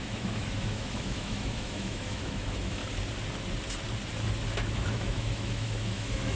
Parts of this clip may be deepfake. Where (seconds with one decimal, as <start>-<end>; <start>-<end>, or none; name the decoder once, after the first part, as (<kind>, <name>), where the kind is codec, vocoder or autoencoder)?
0.0-2.8 (autoencoder, DAC-VAE); 4.5-6.4